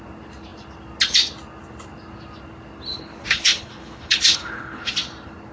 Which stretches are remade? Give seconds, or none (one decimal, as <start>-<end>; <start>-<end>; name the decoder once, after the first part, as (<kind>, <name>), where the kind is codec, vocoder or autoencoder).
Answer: 2.9-4.9 (codec, HILCodec)

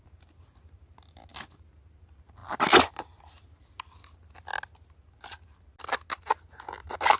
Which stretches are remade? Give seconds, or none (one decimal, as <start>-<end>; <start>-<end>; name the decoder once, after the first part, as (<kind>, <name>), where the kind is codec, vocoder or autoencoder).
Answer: none